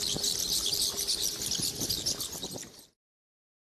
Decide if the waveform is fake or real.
real